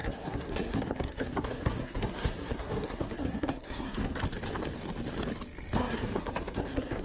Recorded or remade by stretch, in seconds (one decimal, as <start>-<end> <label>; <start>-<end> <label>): 0.0-4.2 remade; 4.2-5.8 recorded; 5.8-7.0 remade